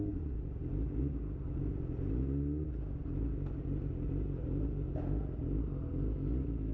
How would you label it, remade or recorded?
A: recorded